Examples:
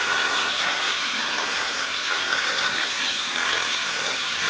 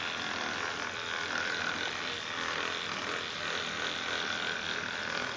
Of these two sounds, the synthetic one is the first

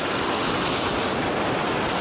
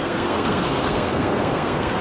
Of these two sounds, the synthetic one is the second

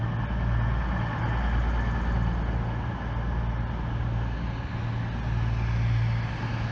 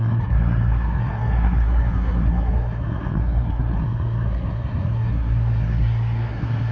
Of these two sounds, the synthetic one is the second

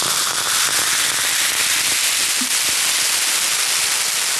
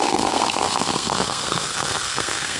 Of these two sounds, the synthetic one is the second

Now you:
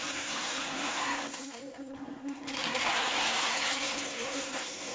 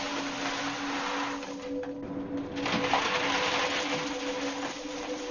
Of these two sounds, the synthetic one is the first